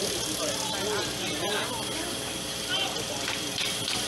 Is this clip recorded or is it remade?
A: recorded